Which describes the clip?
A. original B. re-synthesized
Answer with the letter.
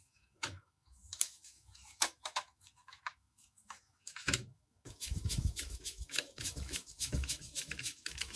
B